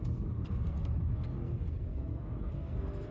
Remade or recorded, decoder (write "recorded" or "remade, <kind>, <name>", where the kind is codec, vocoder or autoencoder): remade, codec, SNAC